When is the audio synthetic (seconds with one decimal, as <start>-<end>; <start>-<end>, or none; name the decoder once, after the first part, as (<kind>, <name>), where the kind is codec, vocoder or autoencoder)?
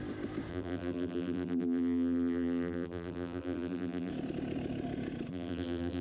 0.5-4.1 (vocoder, BigVGAN v2); 5.3-6.0